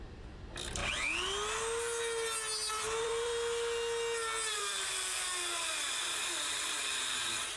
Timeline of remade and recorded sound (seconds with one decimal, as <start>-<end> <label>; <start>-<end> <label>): 0.0-0.8 remade; 0.8-2.7 recorded; 2.7-3.3 remade; 3.3-4.5 recorded; 4.5-4.9 remade; 4.9-7.6 recorded